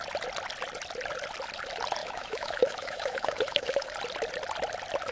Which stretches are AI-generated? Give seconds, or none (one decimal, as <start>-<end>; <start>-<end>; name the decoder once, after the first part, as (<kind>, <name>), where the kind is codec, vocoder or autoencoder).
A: 2.0-3.9 (autoencoder, DAC-VAE)